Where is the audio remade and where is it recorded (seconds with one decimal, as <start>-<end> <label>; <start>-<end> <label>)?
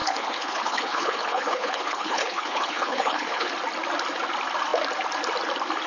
0.0-3.5 remade; 3.5-5.9 recorded